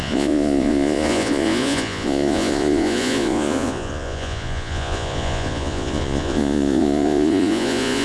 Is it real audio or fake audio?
fake